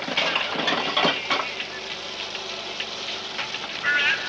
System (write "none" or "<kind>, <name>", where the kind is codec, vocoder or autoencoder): none